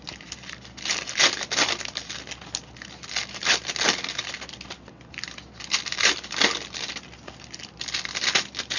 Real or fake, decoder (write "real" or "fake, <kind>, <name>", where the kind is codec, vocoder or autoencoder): real